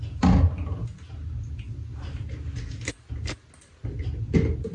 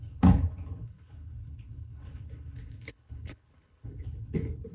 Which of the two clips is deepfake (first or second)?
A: second